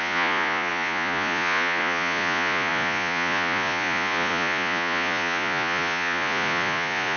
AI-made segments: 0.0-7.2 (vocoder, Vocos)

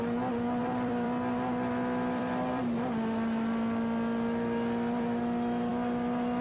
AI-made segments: 0.6-2.6 (vocoder, BigVGAN v2)

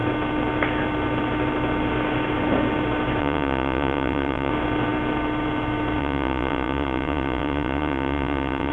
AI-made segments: 3.2-4.5 (vocoder, WaveNeXt); 6.0-8.7

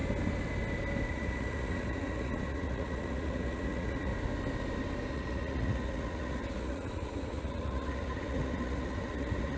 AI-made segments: 1.1-4.1 (vocoder, Vocos); 5.1-9.6

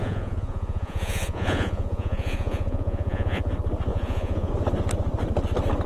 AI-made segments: 0.0-3.5 (vocoder, Vocos); 3.9-4.5